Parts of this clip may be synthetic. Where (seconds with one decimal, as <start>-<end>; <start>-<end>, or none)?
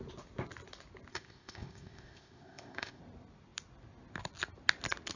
1.1-3.0